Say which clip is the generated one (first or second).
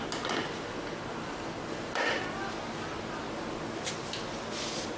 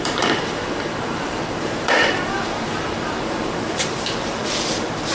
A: second